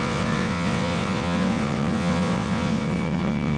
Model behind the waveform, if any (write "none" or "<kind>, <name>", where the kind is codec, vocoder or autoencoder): vocoder, WaveNeXt